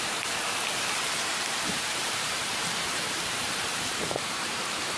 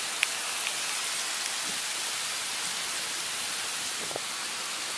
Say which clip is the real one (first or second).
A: second